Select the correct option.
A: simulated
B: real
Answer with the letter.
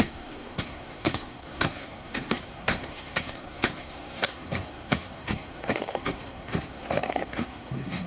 A